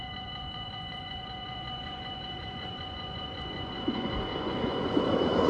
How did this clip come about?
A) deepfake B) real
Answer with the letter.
A